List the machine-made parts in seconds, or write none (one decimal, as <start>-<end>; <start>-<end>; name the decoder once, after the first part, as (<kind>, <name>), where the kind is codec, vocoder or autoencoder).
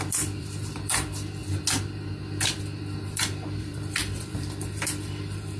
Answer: 0.0-1.4 (vocoder, BigVGAN v2); 3.6-5.6